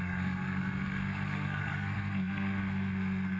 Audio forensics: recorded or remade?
remade